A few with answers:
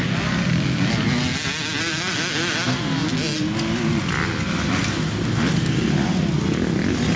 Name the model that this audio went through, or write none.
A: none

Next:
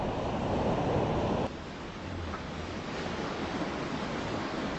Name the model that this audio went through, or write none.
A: none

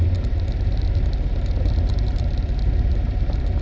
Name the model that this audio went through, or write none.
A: vocoder, BigVGAN v2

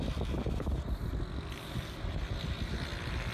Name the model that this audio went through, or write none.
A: none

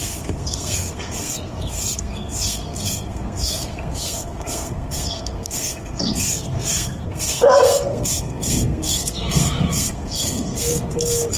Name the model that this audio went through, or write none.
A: codec, SNAC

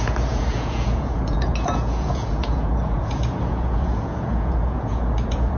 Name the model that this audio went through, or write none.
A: vocoder, Vocos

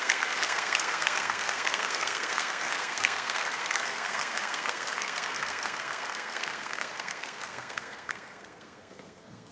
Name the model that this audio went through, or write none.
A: codec, SNAC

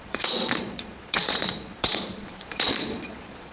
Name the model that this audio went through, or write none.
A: vocoder, Vocos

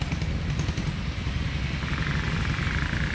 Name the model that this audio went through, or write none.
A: none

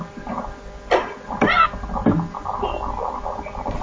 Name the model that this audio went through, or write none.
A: none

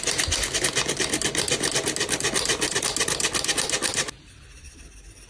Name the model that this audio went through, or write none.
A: none